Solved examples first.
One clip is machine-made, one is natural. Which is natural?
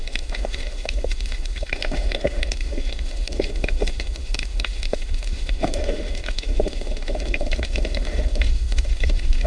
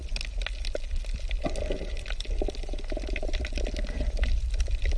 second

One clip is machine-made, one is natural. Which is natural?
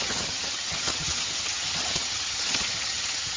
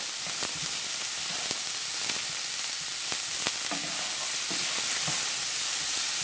second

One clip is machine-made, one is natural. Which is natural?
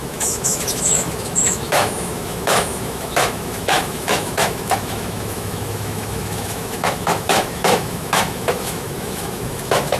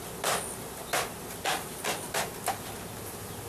second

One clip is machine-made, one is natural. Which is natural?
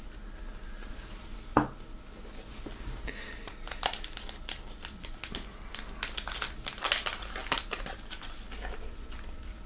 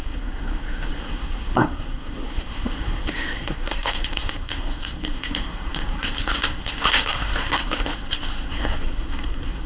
first